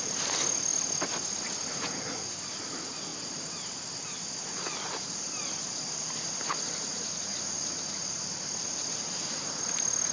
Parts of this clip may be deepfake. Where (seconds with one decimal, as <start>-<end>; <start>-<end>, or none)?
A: none